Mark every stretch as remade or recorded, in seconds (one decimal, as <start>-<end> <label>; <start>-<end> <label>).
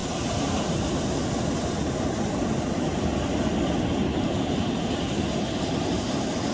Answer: 0.0-0.6 remade; 0.6-6.5 recorded